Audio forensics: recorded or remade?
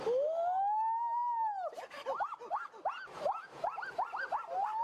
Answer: recorded